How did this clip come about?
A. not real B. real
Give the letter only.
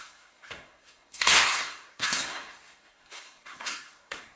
A